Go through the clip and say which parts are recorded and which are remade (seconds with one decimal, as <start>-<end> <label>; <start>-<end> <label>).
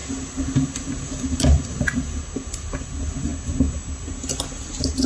0.0-5.1 recorded